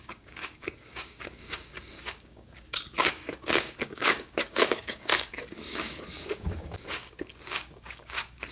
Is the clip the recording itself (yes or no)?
no